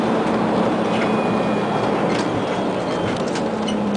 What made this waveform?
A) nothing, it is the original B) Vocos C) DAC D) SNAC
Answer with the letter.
A